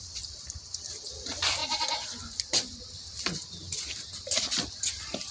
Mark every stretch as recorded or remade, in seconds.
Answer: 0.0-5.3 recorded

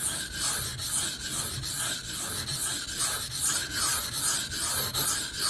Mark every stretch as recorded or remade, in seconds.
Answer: 0.0-5.5 recorded

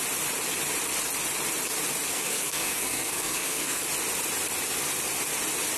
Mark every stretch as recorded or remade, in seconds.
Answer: 0.0-2.1 recorded; 2.1-3.8 remade; 3.8-5.8 recorded